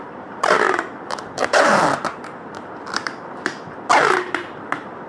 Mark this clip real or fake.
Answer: real